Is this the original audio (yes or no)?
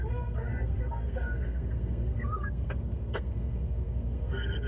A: no